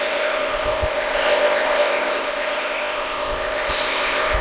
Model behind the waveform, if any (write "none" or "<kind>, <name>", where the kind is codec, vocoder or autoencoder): codec, ZipCodec